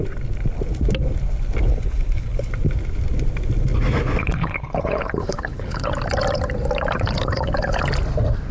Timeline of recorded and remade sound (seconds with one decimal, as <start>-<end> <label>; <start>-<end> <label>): 0.0-1.7 recorded; 1.7-2.5 remade; 2.5-4.2 recorded; 4.2-5.9 remade; 5.9-8.5 recorded